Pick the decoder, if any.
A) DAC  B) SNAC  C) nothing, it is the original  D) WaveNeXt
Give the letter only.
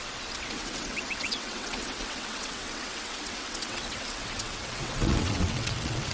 D